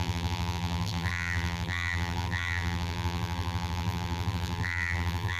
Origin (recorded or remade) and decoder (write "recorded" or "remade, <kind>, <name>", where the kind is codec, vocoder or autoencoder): remade, vocoder, BigVGAN v2